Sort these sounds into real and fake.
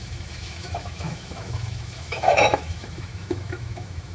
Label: fake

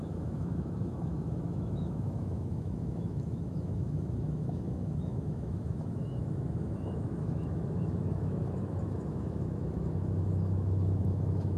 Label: fake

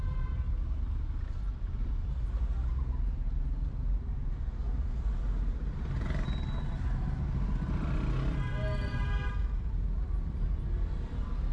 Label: real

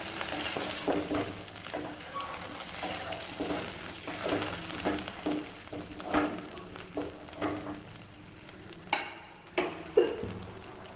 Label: real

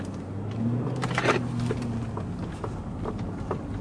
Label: real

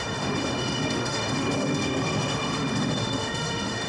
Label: fake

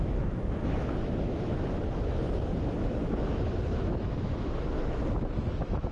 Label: fake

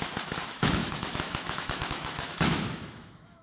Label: fake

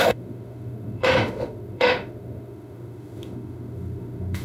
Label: fake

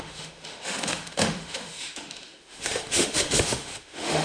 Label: fake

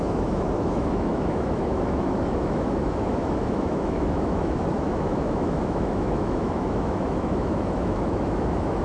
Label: fake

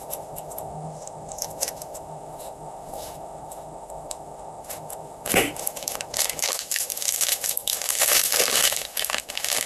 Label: fake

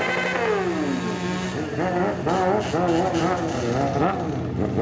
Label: real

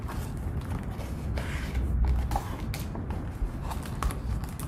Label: real